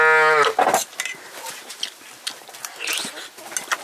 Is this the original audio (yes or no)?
yes